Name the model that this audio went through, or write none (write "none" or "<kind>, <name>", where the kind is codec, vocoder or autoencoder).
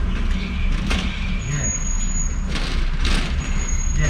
none